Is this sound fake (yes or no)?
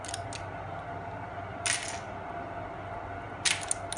no